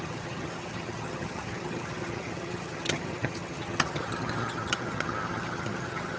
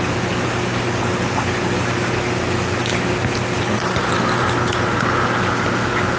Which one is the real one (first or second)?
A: second